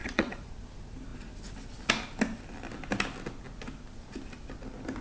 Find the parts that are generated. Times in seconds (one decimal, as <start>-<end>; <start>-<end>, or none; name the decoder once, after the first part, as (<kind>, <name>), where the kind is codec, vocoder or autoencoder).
0.0-0.5 (vocoder, Vocos)

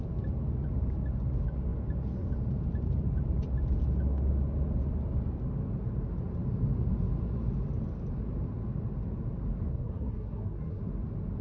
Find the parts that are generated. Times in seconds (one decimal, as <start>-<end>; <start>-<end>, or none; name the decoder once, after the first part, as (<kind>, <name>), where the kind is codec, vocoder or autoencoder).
9.7-10.8 (codec, SNAC)

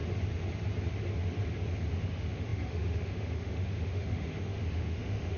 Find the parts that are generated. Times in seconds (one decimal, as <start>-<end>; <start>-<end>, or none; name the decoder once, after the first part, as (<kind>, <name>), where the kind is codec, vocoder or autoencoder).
1.9-5.4 (autoencoder, DAC-VAE)

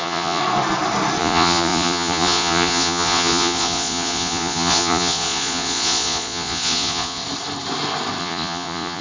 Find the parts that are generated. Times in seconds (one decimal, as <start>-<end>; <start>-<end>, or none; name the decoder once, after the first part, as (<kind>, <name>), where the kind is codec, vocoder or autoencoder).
0.0-0.4 (vocoder, Vocos); 1.2-7.2; 8.2-9.0

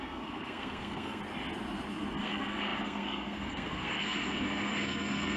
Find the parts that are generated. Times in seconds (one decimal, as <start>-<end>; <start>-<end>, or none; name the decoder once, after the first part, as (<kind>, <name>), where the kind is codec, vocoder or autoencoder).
0.0-1.2 (codec, SNAC); 2.2-5.4